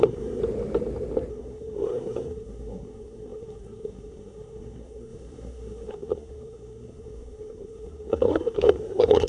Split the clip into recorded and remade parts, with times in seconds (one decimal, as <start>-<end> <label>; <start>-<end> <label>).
0.0-0.4 remade; 0.4-1.3 recorded; 1.3-9.3 remade